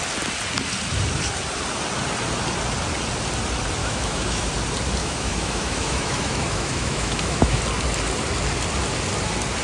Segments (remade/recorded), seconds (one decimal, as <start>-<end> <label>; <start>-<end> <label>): 0.0-3.8 recorded; 3.8-4.5 remade; 4.5-5.0 recorded; 5.0-7.6 remade; 7.6-9.6 recorded